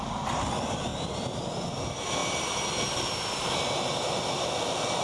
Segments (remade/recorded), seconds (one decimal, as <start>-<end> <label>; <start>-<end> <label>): 0.0-5.0 recorded